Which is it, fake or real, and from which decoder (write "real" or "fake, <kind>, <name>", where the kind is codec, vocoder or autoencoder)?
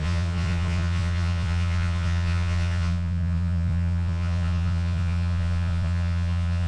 fake, vocoder, Vocos